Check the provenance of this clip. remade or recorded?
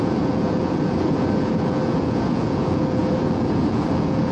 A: remade